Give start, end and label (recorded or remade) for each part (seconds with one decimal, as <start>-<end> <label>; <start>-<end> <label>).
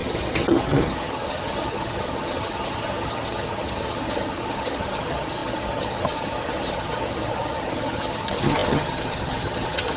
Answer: 0.0-10.0 remade